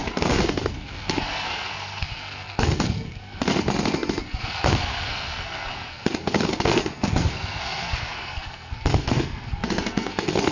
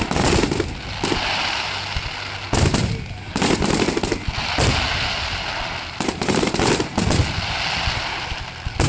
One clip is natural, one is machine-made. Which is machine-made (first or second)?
first